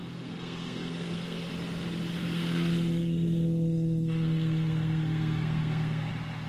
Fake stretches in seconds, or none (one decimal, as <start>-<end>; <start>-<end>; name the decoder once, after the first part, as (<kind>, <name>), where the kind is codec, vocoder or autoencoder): 0.0-1.5 (codec, SNAC); 2.2-6.1